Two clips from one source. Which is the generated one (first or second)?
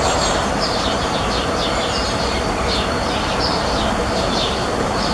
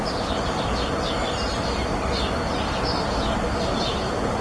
first